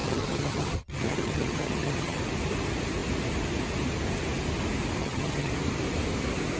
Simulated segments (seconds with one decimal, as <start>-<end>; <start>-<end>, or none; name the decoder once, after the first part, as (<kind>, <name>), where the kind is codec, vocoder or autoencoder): 0.0-2.2 (vocoder, HiFi-GAN); 5.0-5.5